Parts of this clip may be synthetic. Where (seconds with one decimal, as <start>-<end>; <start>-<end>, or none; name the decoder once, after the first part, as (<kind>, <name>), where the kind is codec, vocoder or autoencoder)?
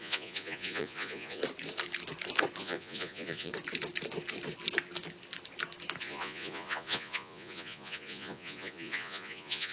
0.0-1.4 (vocoder, Vocos); 2.6-3.5; 6.0-9.7